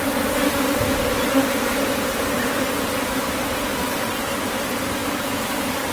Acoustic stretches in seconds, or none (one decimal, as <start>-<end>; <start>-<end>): 0.0-5.0